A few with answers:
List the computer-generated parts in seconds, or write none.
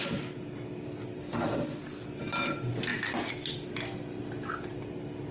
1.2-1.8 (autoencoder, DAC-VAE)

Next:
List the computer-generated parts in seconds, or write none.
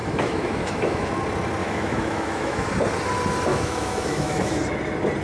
0.0-1.1 (autoencoder, DAC-VAE); 1.6-2.7; 3.5-4.6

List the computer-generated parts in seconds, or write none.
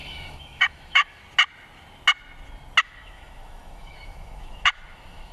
0.0-1.2 (autoencoder, DAC-VAE); 2.8-5.3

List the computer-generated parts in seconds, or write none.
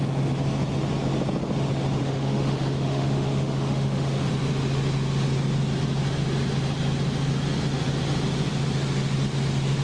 2.0-4.3 (autoencoder, DAC-VAE)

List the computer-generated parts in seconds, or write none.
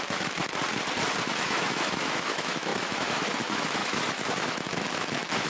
0.0-0.4 (autoencoder, DAC-VAE); 1.2-5.5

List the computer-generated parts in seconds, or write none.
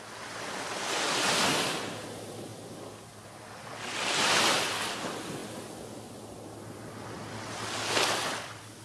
none